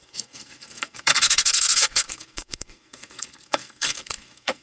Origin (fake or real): fake